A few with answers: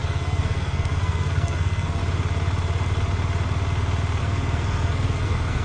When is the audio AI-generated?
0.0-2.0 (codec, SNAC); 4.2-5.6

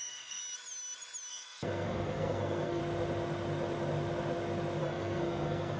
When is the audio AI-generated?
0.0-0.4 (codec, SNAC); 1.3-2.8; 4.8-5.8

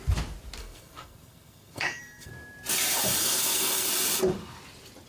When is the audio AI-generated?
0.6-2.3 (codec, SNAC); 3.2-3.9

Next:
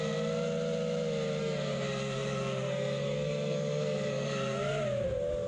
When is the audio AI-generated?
1.4-4.7 (codec, SNAC)

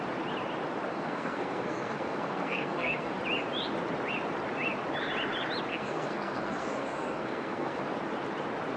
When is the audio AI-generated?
0.9-3.2 (codec, SNAC); 5.7-7.8